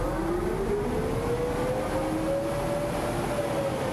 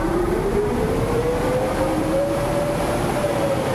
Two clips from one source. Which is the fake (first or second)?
second